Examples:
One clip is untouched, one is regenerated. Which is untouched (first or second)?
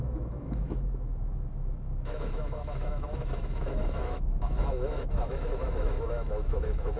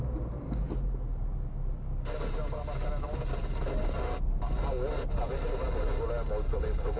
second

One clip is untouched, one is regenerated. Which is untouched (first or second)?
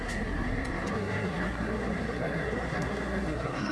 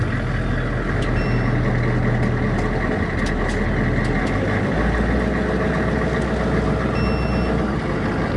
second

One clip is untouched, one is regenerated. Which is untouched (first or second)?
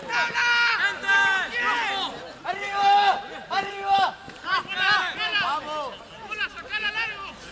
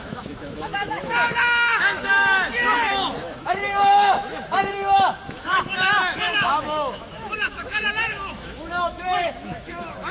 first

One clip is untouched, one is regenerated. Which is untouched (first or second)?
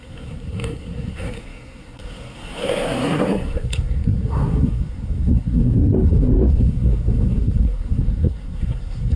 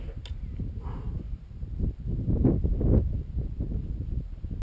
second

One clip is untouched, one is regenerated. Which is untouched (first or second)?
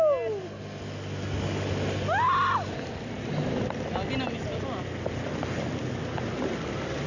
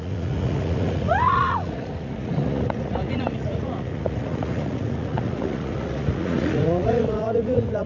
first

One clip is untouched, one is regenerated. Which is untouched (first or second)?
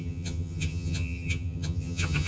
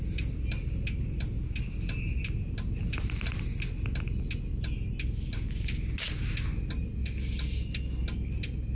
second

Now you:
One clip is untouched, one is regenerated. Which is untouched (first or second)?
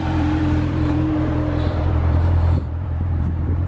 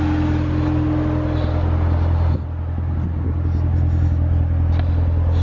second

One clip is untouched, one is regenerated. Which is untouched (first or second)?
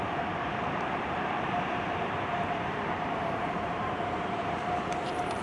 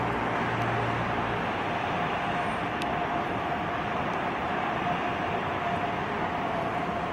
second